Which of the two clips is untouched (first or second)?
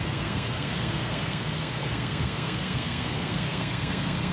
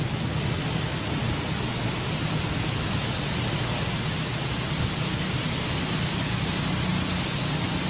second